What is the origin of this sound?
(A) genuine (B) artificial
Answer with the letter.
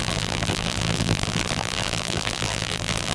B